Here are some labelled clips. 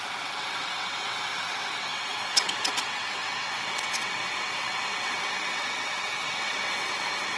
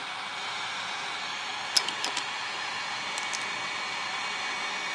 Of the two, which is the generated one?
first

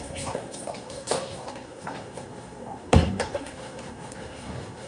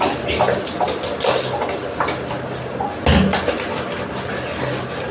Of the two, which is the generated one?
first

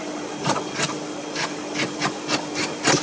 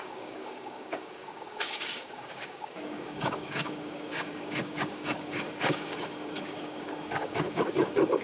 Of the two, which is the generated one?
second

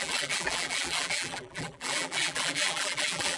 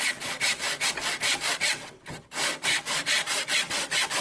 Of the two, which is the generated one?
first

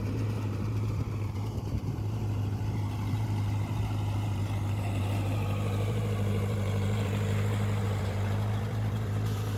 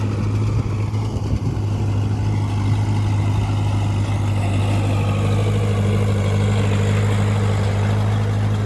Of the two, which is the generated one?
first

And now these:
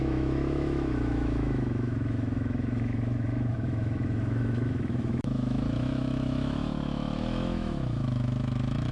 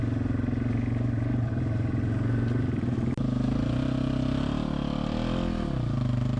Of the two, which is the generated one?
first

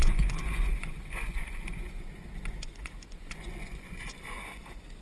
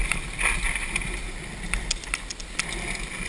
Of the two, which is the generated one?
first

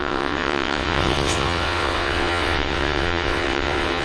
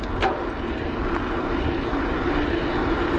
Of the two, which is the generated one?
first